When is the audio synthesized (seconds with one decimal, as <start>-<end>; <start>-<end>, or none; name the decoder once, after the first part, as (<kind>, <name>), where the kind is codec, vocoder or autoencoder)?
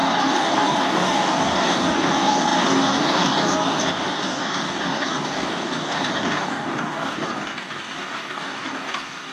0.0-9.3 (codec, DAC)